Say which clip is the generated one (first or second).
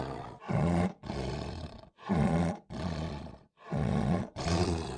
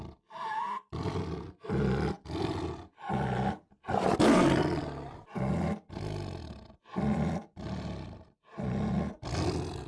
first